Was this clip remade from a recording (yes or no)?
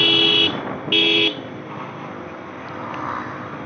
no